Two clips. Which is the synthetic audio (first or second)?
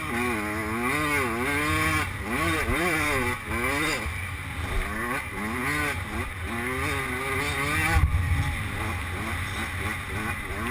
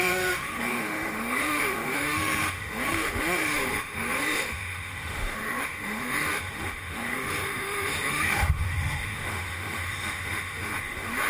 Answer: second